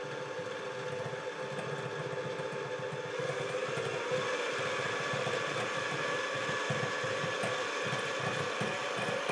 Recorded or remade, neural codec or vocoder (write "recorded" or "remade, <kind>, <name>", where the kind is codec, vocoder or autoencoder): recorded